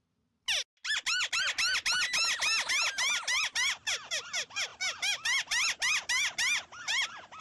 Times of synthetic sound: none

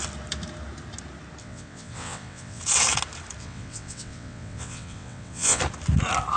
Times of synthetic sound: 1.4-2.6 (vocoder, WaveNeXt); 3.4-5.6

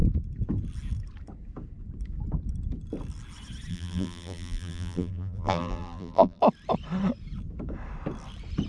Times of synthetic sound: 3.7-6.4 (vocoder, BigVGAN v2)

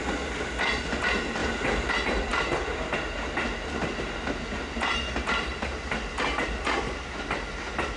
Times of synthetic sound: none